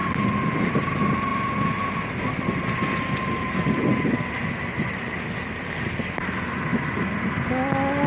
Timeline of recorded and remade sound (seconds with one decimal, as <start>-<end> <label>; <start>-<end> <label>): 0.0-8.1 recorded